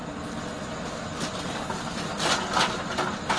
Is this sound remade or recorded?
recorded